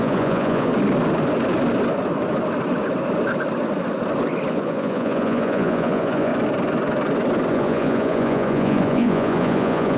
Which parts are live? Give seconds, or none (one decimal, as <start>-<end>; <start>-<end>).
0.7-4.5; 6.3-7.5